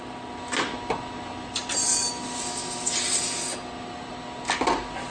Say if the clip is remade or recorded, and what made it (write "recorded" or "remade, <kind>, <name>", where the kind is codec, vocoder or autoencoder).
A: recorded